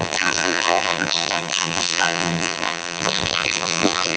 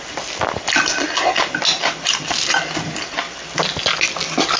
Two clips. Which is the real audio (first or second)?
second